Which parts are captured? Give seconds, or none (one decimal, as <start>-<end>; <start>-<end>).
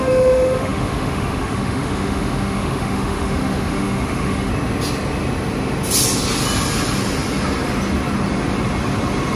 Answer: 4.5-9.4